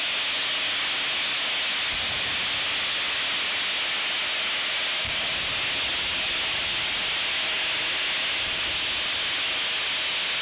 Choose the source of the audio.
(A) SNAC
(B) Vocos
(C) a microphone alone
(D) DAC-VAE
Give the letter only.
C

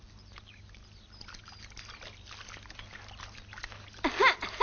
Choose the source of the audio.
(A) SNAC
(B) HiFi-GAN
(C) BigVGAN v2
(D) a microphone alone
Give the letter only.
D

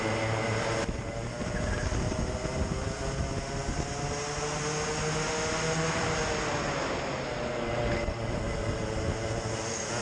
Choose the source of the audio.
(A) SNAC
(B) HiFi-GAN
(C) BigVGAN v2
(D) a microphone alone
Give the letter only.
D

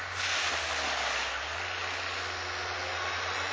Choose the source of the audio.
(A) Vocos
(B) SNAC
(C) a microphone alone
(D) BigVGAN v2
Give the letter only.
C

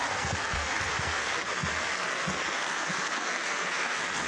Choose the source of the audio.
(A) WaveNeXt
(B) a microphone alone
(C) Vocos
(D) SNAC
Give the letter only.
D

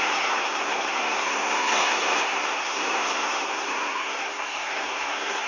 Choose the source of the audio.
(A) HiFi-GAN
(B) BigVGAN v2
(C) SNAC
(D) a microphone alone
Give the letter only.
C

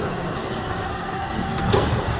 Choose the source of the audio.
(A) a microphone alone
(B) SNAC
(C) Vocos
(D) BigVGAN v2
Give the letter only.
B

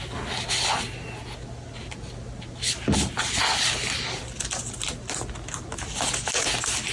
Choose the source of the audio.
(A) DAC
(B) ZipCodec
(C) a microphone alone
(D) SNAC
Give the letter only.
C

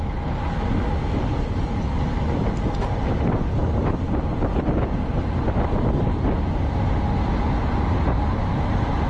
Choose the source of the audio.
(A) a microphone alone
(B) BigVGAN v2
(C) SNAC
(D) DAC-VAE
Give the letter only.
A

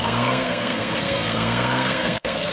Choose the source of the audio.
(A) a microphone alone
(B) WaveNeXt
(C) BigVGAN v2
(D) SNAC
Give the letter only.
D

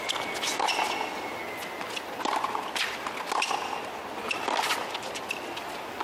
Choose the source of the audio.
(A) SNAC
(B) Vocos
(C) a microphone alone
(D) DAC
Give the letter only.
C